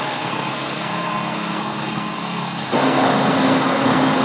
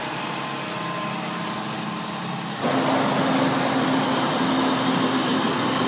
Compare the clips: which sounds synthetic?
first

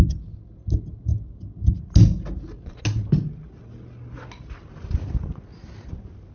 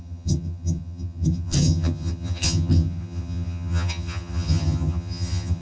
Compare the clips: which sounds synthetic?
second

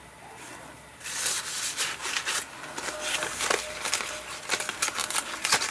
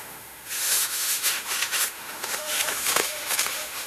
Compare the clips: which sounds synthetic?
second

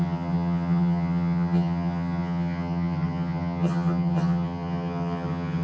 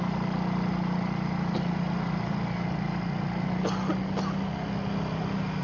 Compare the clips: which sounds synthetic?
first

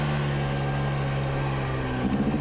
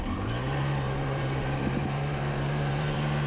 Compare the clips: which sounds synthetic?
second